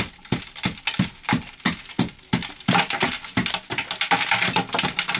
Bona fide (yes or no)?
yes